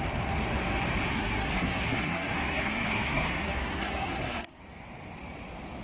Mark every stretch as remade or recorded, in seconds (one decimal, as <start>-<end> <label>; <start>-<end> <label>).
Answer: 0.0-1.1 recorded; 1.1-4.6 remade; 4.6-5.8 recorded